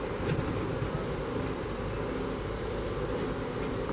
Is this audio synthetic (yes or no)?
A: yes